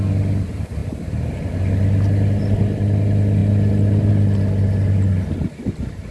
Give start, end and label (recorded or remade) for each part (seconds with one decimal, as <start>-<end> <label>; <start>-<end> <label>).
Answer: 0.0-6.1 recorded